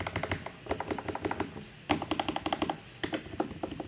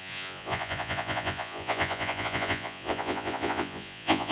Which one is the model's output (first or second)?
second